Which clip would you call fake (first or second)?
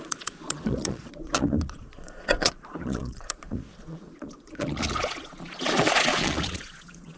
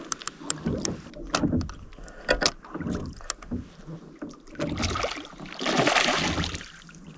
first